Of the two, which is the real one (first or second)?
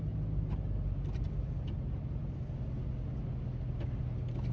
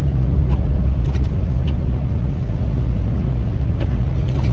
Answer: first